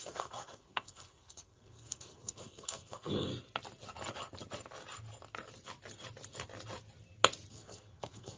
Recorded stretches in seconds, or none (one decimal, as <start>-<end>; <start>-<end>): 3.3-7.5